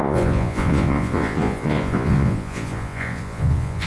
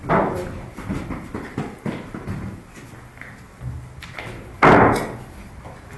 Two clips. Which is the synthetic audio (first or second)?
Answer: first